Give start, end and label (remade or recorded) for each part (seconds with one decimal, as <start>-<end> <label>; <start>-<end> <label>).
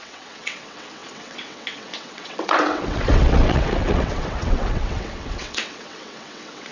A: 0.0-6.7 remade